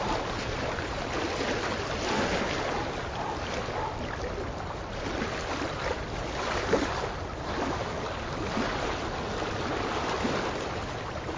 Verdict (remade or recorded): recorded